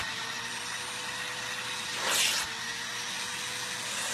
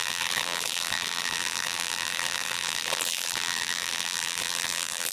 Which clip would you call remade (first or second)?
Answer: second